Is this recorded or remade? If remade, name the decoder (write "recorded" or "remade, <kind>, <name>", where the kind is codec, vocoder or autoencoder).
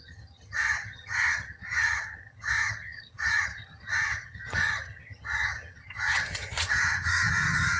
remade, vocoder, HiFi-GAN